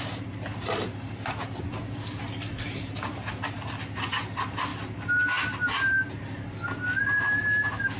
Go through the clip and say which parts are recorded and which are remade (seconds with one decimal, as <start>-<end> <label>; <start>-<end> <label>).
0.0-8.0 recorded